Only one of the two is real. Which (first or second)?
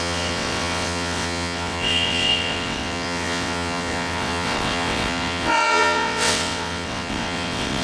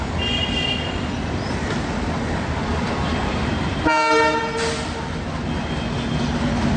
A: second